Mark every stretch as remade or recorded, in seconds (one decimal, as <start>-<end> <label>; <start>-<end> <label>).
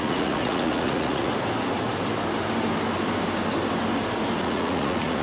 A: 0.0-1.3 remade; 1.3-4.4 recorded; 4.4-5.2 remade